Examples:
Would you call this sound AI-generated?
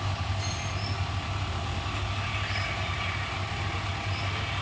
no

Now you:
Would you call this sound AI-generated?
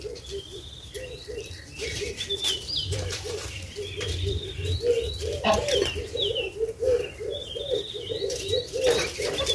yes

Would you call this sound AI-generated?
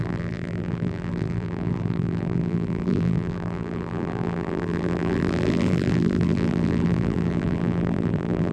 yes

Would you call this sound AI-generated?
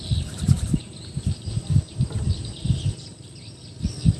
yes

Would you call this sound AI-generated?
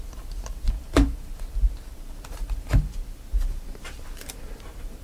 yes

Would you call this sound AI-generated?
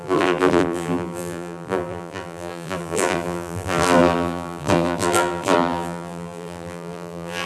yes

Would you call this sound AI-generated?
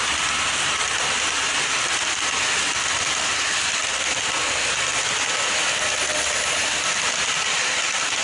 yes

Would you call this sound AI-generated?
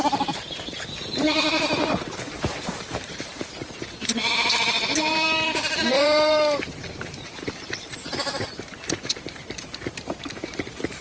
yes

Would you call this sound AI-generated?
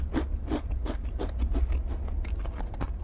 no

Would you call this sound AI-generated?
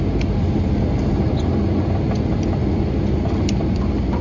no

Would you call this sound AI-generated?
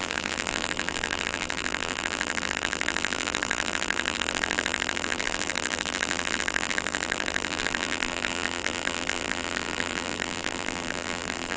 yes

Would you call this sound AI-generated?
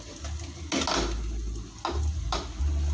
no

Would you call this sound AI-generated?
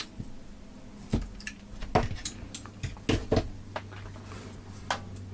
no